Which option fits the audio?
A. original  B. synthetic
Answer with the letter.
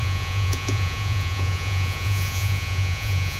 B